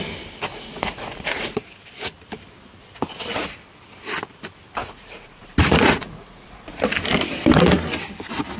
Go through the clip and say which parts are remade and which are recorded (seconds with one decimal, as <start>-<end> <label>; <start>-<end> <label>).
0.0-0.5 recorded; 0.5-1.6 remade; 1.6-4.8 recorded; 4.8-6.8 remade; 6.8-8.6 recorded